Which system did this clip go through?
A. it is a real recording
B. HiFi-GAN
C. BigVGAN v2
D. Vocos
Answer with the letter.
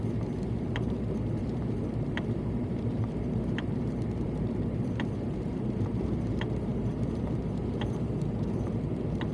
C